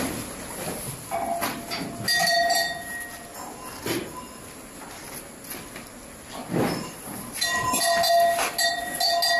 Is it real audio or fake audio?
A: real